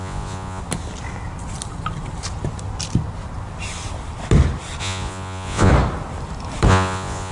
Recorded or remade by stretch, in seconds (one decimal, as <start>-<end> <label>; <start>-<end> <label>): 0.0-0.6 remade; 0.6-4.8 recorded; 4.8-5.7 remade; 5.7-6.7 recorded; 6.7-7.3 remade